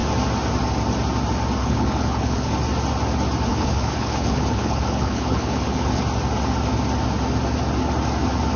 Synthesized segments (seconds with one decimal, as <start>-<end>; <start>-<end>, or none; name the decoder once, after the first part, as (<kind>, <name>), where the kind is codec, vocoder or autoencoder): 1.6-2.5 (codec, HILCodec); 3.5-6.0